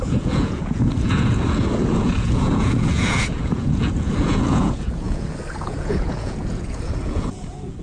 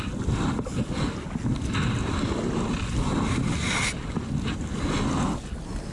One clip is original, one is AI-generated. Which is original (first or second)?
second